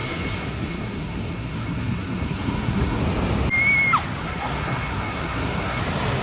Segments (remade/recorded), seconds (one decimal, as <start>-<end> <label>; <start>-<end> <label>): 0.0-3.0 remade; 3.0-4.2 recorded; 4.2-5.8 remade; 5.8-6.2 recorded